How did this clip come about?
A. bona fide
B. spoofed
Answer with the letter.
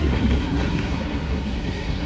B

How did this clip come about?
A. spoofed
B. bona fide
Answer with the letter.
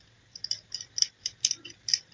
A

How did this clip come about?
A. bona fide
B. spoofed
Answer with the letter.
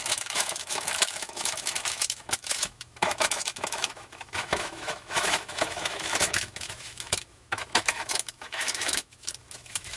B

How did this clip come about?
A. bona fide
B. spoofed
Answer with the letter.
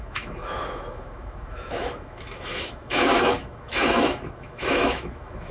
B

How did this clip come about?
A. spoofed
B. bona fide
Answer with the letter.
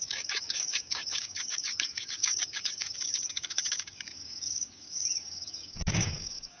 A